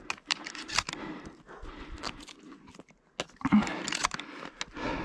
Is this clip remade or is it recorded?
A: recorded